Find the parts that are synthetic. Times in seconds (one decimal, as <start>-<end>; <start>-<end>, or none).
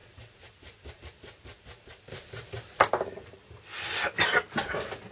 2.1-2.8